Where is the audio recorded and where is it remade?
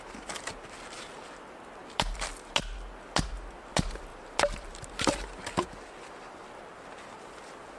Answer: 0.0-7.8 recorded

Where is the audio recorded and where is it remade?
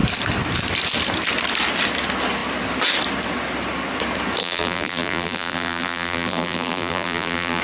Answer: 0.0-4.4 recorded; 4.4-7.6 remade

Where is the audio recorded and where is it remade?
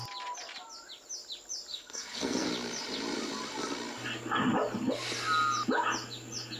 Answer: 0.0-1.7 recorded; 1.7-2.5 remade; 2.5-6.6 recorded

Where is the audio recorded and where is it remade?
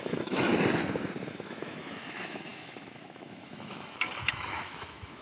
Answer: 0.0-0.5 remade; 0.5-1.2 recorded; 1.2-5.2 remade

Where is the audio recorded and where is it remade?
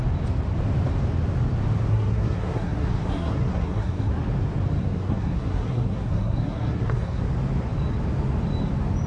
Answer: 0.0-1.9 recorded; 1.9-4.1 remade; 4.1-4.8 recorded; 4.8-7.2 remade; 7.2-9.1 recorded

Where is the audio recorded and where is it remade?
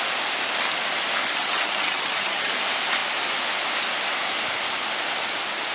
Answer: 0.0-1.2 recorded; 1.2-2.5 remade; 2.5-5.7 recorded